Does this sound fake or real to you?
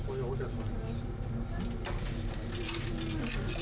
real